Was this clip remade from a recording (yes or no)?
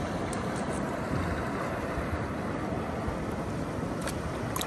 no